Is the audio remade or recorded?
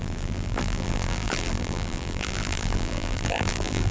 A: remade